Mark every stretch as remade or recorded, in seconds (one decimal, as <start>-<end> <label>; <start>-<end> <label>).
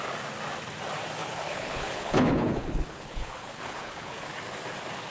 0.0-1.2 recorded; 1.2-4.3 remade; 4.3-5.1 recorded